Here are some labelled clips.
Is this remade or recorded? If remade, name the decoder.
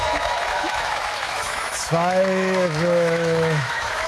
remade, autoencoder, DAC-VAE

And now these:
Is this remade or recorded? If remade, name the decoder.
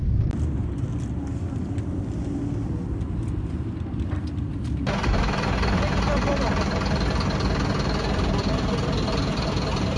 recorded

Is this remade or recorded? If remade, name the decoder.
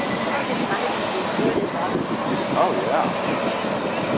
recorded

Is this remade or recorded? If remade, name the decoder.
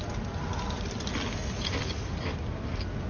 recorded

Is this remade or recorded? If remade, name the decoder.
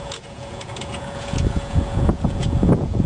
remade, vocoder, Vocos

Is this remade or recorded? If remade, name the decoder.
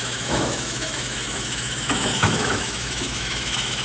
remade, autoencoder, DAC-VAE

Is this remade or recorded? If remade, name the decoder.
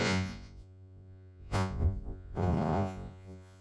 remade, vocoder, Vocos